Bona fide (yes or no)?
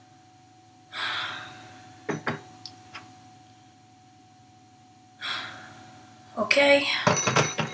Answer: yes